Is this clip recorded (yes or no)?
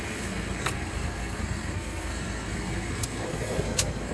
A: no